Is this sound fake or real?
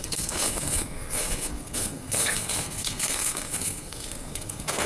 fake